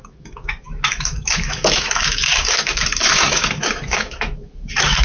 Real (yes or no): no